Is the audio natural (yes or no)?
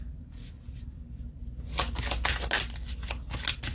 yes